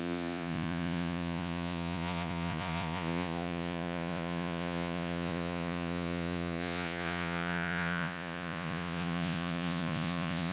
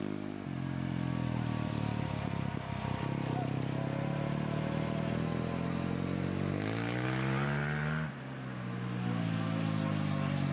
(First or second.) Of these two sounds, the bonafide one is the second